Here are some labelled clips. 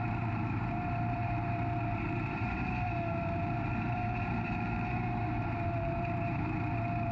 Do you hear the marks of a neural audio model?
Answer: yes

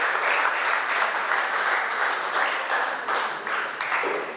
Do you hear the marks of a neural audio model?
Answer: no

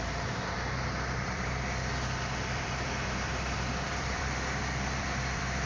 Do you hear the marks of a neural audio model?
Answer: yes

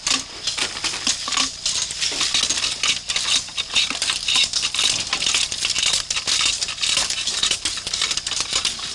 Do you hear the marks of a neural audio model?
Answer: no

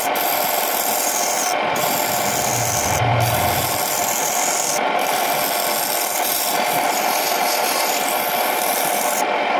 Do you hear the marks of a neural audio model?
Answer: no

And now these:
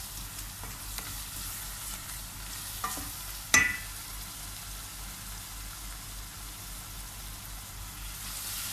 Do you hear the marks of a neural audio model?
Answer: no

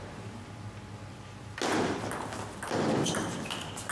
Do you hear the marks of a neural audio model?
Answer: no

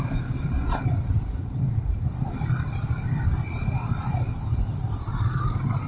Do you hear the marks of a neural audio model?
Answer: no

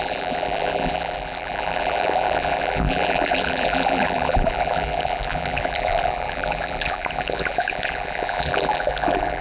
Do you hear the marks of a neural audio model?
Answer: yes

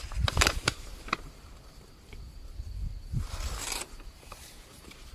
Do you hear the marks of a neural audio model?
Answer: yes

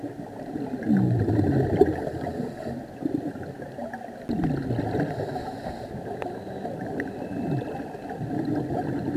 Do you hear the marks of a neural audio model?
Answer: no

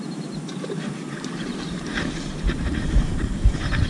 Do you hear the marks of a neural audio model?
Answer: yes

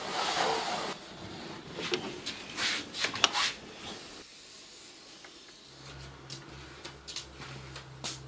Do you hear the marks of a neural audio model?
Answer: no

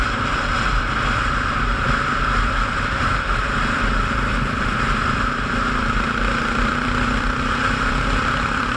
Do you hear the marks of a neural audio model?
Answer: yes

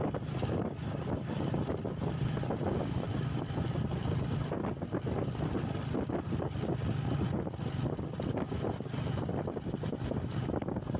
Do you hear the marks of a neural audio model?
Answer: yes